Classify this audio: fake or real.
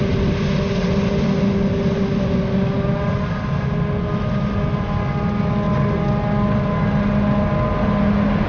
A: real